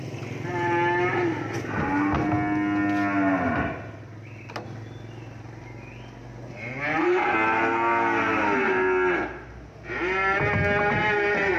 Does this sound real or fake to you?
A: real